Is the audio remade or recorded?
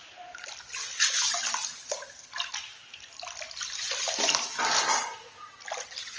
recorded